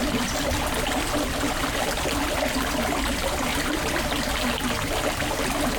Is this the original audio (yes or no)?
yes